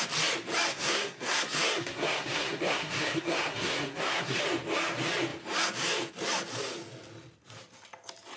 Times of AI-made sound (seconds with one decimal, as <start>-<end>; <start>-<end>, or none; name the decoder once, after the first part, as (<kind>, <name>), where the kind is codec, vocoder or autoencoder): 0.7-4.4 (codec, SNAC)